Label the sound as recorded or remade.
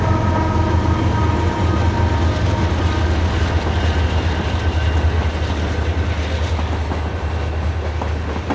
recorded